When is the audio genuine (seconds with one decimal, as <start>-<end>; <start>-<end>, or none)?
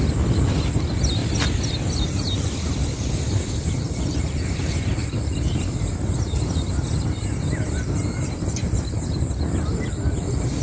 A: 0.0-1.2; 4.2-5.0; 9.9-10.6